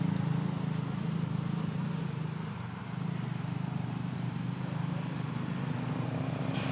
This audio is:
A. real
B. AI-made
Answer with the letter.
A